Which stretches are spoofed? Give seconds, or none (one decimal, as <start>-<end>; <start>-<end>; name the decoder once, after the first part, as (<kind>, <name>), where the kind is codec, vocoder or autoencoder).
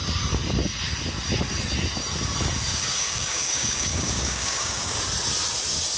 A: 2.7-5.0 (codec, DAC)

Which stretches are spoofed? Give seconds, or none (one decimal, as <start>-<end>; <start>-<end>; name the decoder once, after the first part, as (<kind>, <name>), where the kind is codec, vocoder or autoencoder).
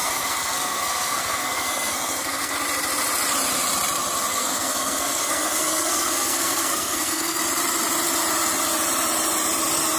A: 0.0-2.5 (codec, SNAC); 4.3-7.4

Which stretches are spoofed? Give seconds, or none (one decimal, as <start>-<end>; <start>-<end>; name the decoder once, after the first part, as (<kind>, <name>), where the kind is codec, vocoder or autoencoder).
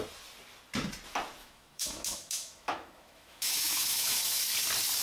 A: 1.4-4.4 (autoencoder, DAC-VAE)